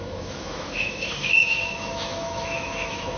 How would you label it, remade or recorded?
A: remade